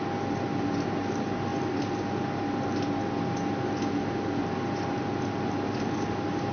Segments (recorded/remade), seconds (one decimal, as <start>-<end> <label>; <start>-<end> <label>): 0.0-6.5 recorded